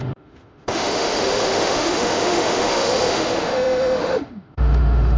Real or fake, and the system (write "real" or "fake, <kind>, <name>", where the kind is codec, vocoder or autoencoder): fake, autoencoder, DAC-VAE